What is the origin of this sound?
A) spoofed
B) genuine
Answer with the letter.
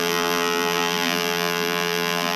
A